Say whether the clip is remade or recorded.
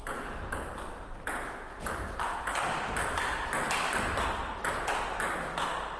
recorded